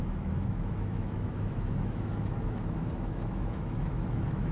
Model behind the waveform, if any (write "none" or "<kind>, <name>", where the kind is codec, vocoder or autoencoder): autoencoder, DAC-VAE